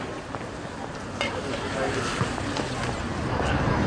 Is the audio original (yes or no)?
yes